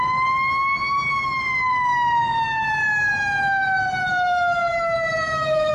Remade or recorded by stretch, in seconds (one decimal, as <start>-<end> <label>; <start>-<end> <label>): 0.0-4.1 recorded; 4.1-5.7 remade